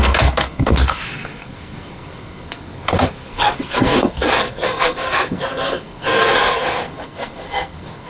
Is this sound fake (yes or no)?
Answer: yes